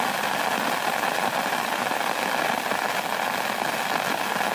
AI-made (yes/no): no